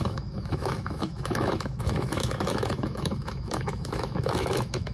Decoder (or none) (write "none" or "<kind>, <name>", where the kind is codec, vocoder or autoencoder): autoencoder, DAC-VAE